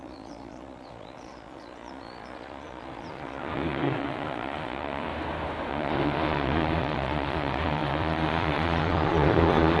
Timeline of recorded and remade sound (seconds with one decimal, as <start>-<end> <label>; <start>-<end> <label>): 0.0-5.1 remade; 5.1-5.7 recorded; 5.7-9.8 remade